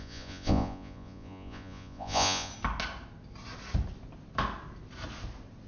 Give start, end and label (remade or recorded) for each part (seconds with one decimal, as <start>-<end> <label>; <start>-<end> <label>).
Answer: 0.0-2.5 remade; 2.5-5.7 recorded